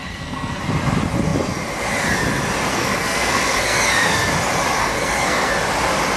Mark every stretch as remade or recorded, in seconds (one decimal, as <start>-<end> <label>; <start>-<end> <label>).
0.0-0.6 remade; 0.6-2.7 recorded; 2.7-4.3 remade; 4.3-4.8 recorded; 4.8-5.5 remade; 5.5-6.2 recorded